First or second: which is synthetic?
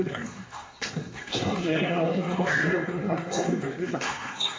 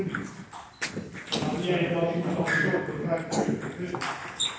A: first